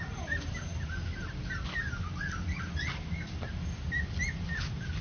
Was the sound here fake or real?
real